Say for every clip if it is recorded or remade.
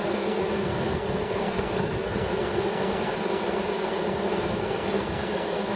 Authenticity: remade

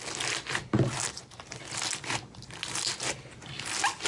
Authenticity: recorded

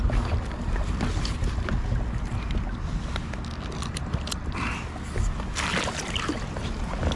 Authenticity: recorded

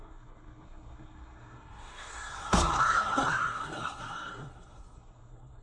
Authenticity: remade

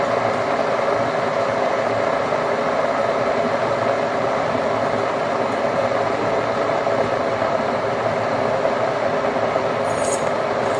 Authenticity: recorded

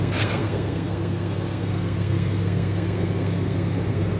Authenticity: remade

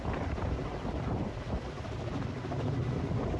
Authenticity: recorded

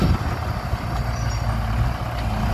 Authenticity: recorded